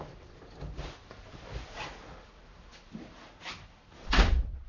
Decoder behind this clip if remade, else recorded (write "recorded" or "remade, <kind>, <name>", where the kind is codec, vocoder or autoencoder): remade, vocoder, BigVGAN v2